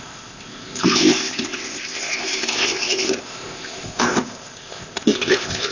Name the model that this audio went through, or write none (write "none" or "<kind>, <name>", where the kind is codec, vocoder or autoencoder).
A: codec, ZipCodec